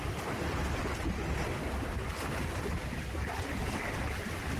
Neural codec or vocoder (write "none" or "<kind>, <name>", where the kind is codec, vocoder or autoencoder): none